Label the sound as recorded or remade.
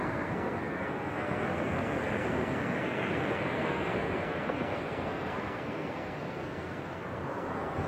remade